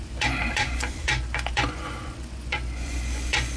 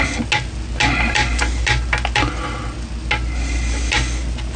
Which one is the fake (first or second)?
first